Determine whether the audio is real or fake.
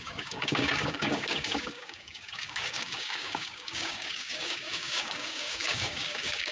fake